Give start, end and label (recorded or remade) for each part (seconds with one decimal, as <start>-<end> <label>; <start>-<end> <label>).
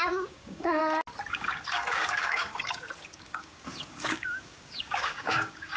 0.0-0.8 remade; 0.8-1.3 recorded; 1.3-5.8 remade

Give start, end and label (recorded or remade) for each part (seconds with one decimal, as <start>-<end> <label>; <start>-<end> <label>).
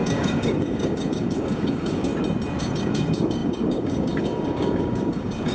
0.0-2.1 remade; 2.1-2.6 recorded; 2.6-5.5 remade